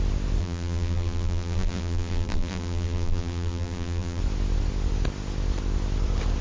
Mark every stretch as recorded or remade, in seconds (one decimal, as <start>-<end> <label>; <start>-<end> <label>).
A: 0.0-0.4 recorded; 0.4-4.2 remade; 4.2-6.4 recorded